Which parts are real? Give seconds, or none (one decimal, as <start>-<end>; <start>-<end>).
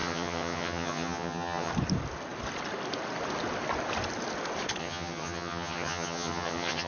1.7-4.8